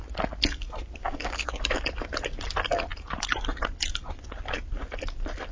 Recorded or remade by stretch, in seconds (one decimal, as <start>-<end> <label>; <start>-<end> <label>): 0.0-1.0 recorded; 1.0-1.6 remade; 1.6-5.5 recorded